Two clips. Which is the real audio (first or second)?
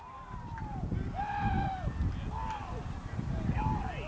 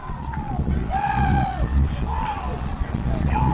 first